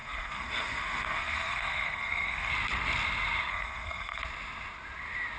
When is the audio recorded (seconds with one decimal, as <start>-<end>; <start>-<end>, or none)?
2.5-3.5; 4.2-5.4